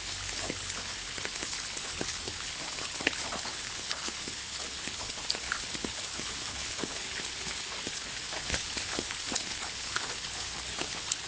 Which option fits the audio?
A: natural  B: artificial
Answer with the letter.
B